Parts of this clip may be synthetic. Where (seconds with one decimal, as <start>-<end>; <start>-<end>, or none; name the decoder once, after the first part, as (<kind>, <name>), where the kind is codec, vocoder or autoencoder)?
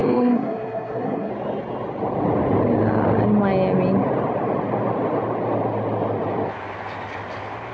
0.0-1.3 (codec, SNAC)